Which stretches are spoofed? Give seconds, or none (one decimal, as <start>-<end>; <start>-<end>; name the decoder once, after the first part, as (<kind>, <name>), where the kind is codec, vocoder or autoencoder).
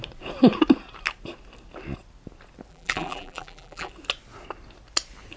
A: 2.7-3.9 (vocoder, BigVGAN v2)